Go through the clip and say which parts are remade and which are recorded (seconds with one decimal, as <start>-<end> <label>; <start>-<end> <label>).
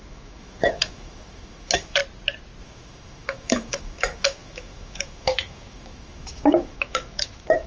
0.0-2.0 remade; 2.0-2.6 recorded; 2.6-7.7 remade